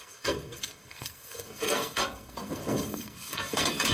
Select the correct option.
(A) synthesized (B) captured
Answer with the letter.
A